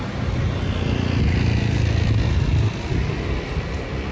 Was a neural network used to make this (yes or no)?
no